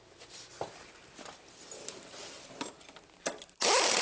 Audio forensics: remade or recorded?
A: recorded